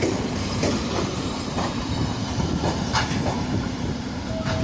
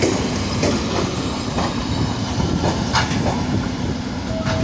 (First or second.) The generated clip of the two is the first